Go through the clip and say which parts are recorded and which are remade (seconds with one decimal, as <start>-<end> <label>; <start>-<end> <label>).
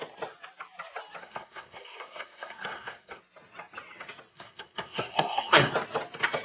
0.0-1.2 recorded; 1.2-3.2 remade; 3.2-4.3 recorded; 4.3-5.7 remade; 5.7-6.4 recorded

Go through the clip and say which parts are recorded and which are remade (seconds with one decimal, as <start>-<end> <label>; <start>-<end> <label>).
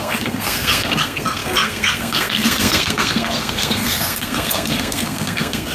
0.0-5.7 remade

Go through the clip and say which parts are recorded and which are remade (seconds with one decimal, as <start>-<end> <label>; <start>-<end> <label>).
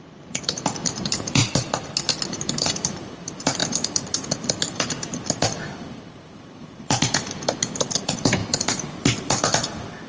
0.0-1.4 remade; 1.4-2.2 recorded; 2.2-8.4 remade; 8.4-9.2 recorded; 9.2-10.1 remade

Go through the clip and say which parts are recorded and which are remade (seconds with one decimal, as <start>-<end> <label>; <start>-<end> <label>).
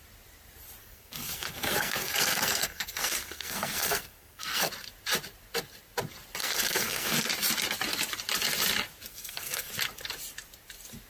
0.0-0.8 recorded; 0.8-4.7 remade; 4.7-6.4 recorded; 6.4-7.3 remade; 7.3-9.1 recorded; 9.1-9.7 remade; 9.7-11.1 recorded